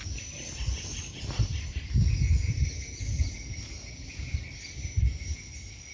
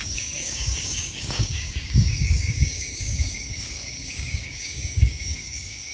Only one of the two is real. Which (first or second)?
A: first